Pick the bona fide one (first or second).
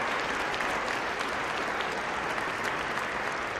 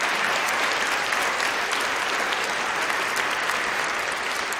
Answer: first